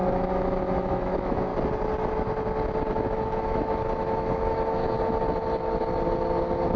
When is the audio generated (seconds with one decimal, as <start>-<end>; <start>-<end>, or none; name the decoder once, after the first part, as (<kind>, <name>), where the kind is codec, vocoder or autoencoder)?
0.0-1.5 (autoencoder, DAC-VAE); 2.9-4.8